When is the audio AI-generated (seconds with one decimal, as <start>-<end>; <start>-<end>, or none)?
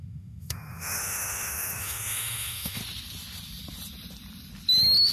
0.0-2.8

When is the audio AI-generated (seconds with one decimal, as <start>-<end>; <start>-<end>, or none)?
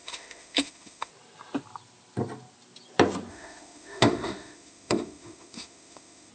0.0-1.1; 3.3-6.3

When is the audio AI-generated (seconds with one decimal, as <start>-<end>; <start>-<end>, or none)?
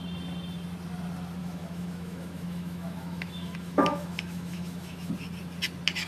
1.4-5.1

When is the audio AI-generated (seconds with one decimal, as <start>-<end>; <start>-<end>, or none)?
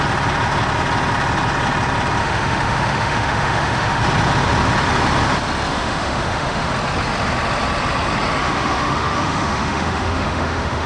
2.2-4.0; 5.7-6.7; 8.4-10.9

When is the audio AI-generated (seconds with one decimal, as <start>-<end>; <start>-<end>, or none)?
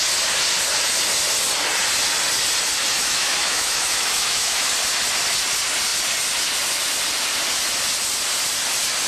3.0-4.7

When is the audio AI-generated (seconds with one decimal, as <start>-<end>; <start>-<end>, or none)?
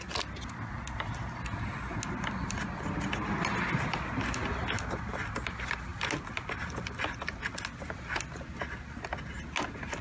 none